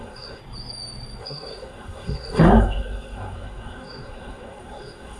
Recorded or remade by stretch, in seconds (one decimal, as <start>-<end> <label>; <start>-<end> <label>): 0.0-0.4 remade; 0.4-1.2 recorded; 1.2-5.2 remade